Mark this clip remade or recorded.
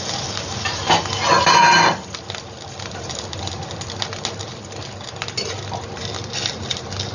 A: recorded